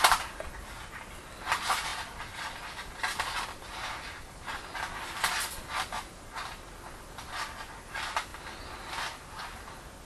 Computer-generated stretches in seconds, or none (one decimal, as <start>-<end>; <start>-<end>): none

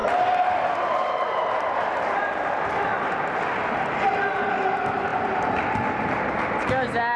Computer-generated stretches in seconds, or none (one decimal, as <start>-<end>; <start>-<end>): 5.1-6.3

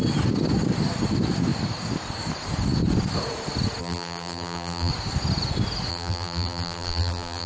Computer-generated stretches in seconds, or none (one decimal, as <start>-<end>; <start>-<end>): 3.8-4.9; 5.9-7.5